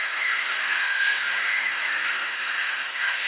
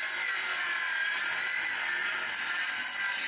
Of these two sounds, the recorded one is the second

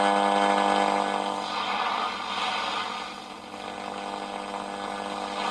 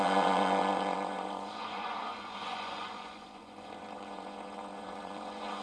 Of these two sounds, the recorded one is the first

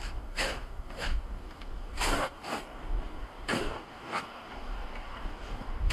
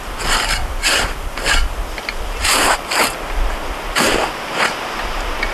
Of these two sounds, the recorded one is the second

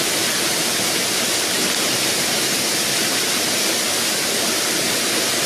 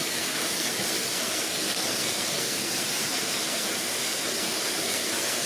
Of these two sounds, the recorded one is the first